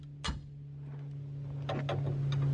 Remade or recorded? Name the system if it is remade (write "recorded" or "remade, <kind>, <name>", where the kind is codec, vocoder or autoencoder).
recorded